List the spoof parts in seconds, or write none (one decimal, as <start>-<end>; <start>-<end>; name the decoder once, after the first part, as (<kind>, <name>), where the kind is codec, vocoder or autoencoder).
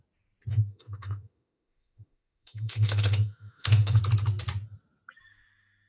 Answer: 0.5-4.0 (autoencoder, DAC-VAE)